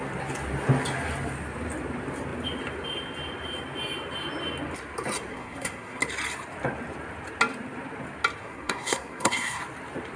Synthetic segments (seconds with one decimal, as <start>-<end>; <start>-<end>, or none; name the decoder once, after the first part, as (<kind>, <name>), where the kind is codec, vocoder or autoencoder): 5.3-6.0 (codec, SNAC); 8.4-9.6